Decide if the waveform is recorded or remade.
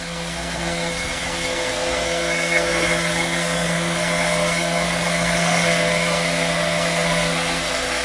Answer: remade